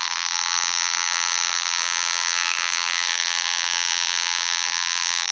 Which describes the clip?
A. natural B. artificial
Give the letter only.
B